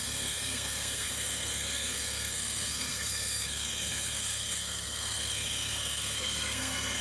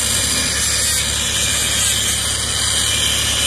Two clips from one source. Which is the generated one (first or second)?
first